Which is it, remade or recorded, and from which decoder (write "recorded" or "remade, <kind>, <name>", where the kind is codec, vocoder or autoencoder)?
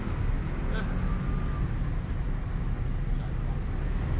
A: recorded